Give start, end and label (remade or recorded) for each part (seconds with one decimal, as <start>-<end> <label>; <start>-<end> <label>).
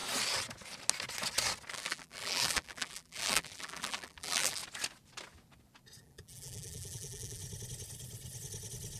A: 0.0-1.7 recorded; 1.7-4.6 remade; 4.6-6.0 recorded; 6.0-7.4 remade; 7.4-9.0 recorded